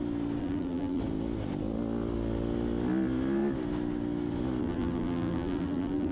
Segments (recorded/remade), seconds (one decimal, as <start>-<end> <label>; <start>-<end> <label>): 0.0-0.4 recorded; 0.4-1.0 remade; 1.0-4.6 recorded; 4.6-6.1 remade